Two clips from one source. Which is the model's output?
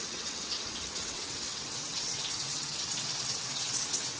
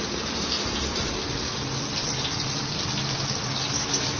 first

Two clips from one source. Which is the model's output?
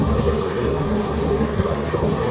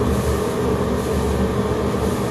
first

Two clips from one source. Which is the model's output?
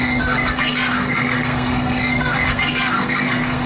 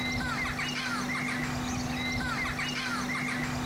first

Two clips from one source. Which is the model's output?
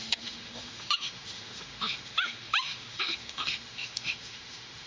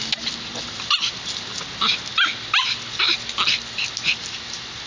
first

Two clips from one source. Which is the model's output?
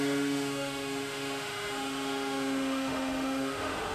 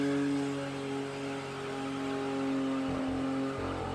first